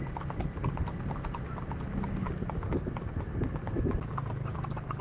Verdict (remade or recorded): recorded